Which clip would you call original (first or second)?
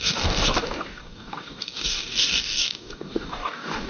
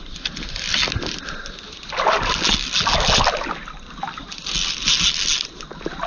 second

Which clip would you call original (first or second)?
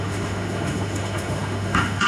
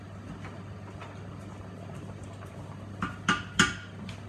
second